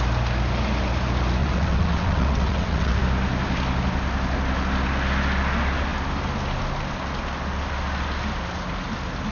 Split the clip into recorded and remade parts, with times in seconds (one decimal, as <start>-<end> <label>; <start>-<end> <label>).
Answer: 0.0-1.4 recorded; 1.4-3.0 remade; 3.0-9.3 recorded